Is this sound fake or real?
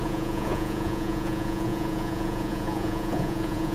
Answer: fake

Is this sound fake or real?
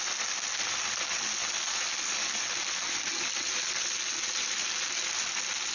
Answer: real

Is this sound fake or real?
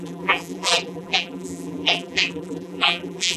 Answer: fake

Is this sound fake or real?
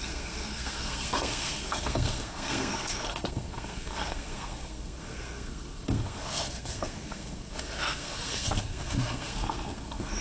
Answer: fake